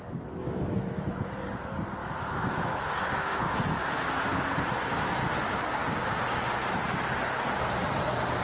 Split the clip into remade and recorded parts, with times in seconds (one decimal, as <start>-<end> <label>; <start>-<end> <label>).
0.0-0.4 recorded; 0.4-1.2 remade; 1.2-2.0 recorded; 2.0-3.4 remade; 3.4-8.4 recorded